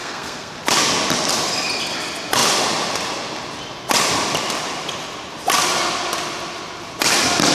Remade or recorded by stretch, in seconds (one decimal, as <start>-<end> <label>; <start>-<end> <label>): 0.0-0.5 remade; 0.5-7.5 recorded